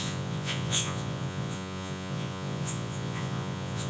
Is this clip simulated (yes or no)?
yes